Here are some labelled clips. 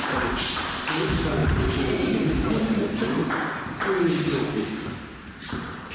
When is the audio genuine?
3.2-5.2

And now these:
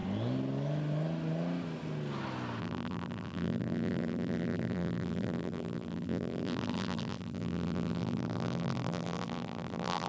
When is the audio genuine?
0.0-2.6

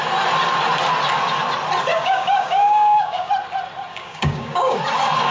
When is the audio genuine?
0.0-1.9; 3.3-3.9; 4.8-5.3